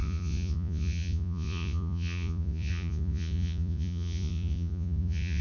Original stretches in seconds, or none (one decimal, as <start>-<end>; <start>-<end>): none